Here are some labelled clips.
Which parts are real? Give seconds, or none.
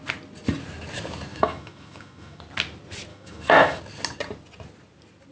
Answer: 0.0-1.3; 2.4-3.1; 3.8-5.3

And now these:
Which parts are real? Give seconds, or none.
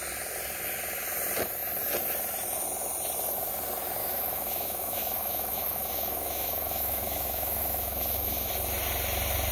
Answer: 0.0-4.0; 8.5-9.5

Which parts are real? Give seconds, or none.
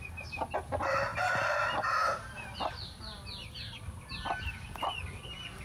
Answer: 0.0-5.6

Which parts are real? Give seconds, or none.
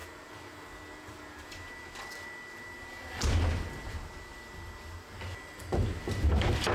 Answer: 0.0-6.7